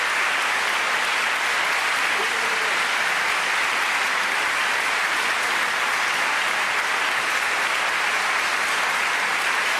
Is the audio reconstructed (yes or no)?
no